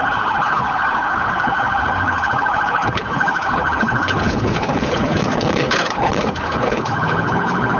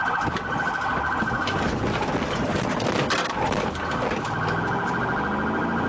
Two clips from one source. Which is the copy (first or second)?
first